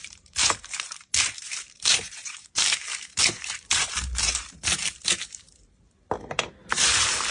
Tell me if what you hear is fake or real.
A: fake